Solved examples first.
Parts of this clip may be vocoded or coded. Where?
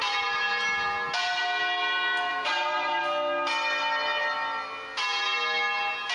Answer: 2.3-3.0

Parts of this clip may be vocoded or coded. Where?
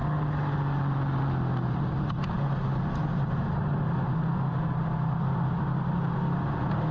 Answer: none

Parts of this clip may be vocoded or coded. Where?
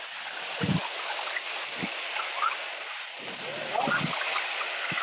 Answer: none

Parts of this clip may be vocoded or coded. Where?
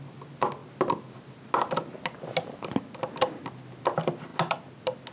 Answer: none